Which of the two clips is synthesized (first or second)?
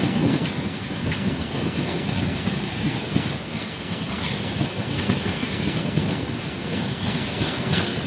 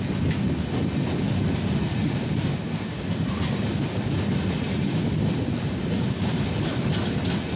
first